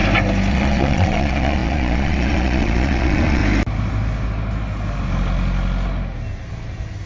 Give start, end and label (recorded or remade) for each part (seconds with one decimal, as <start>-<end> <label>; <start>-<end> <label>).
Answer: 0.0-0.5 recorded; 0.5-3.4 remade; 3.4-7.1 recorded